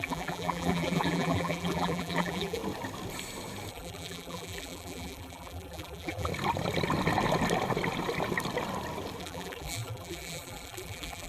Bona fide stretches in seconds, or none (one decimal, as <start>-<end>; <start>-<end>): 2.6-3.7; 6.3-9.2